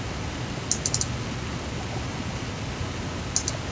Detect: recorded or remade recorded